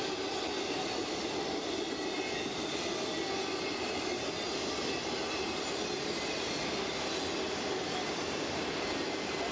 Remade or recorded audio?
recorded